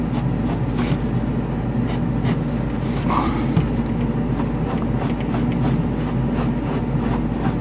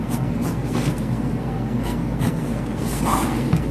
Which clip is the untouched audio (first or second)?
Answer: first